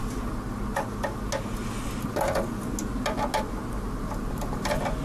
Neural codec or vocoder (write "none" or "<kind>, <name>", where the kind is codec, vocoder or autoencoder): none